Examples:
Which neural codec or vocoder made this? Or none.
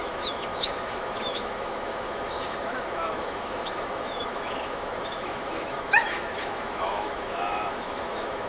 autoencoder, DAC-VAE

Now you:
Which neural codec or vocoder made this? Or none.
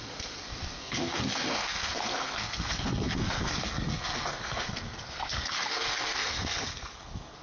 codec, SNAC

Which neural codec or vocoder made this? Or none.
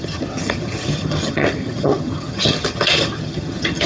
vocoder, HiFi-GAN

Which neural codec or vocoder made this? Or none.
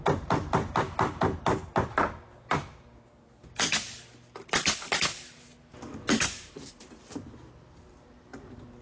none